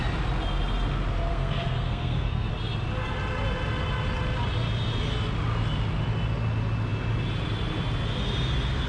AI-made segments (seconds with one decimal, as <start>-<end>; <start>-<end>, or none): 1.3-2.5